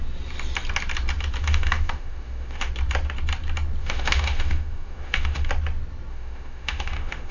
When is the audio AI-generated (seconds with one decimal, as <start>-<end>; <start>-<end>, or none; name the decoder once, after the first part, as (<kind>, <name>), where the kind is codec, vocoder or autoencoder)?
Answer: 1.4-2.7 (autoencoder, DAC-VAE); 3.8-5.5; 6.1-7.3